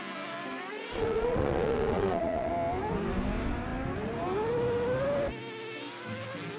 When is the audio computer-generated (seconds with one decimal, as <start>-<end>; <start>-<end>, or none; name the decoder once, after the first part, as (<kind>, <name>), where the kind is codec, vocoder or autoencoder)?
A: 0.7-2.5 (vocoder, Vocos)